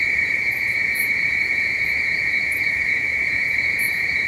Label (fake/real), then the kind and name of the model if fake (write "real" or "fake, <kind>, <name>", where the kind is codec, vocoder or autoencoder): fake, vocoder, Vocos